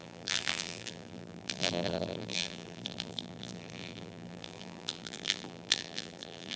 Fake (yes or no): yes